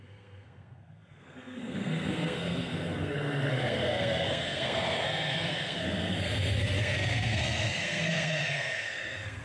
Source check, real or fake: fake